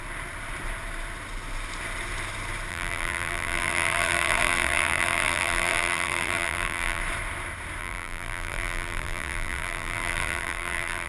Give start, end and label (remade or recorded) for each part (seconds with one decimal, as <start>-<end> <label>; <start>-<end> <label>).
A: 0.0-2.7 recorded; 2.7-7.0 remade; 7.0-7.8 recorded; 7.8-11.1 remade